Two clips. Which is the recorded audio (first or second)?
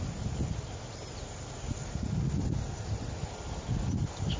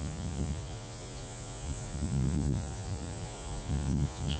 first